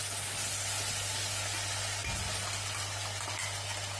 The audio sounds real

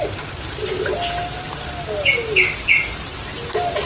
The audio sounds real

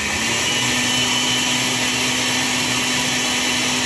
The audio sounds real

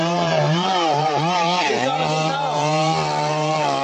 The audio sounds fake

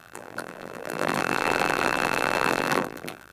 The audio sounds fake